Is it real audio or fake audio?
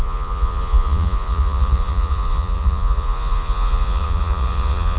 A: fake